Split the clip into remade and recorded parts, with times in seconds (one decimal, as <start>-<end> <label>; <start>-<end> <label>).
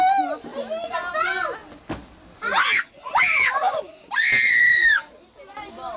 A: 0.0-6.0 recorded